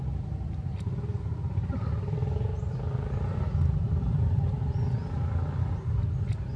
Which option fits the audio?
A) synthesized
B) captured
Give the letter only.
B